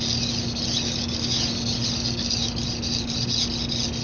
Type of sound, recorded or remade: recorded